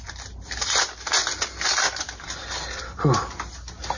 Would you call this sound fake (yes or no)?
no